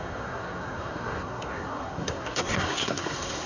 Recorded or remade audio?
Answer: remade